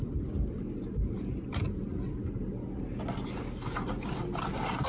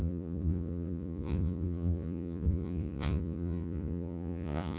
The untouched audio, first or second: first